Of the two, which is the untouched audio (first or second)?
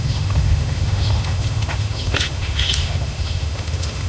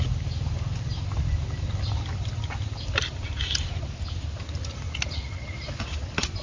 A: second